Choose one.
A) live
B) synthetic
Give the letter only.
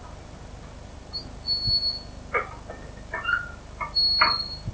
A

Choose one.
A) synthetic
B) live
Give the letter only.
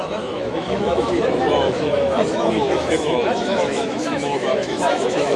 A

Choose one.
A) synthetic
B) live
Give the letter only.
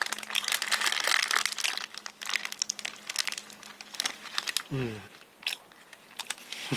B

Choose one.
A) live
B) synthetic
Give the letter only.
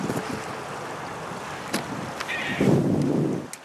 A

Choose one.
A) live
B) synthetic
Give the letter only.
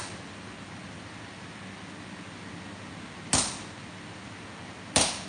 A